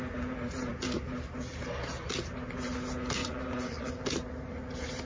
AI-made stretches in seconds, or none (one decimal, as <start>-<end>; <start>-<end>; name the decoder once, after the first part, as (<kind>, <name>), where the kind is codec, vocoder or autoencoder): 3.2-3.9 (vocoder, Vocos)